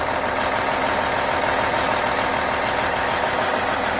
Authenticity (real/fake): fake